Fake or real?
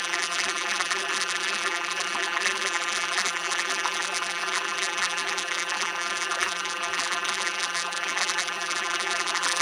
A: fake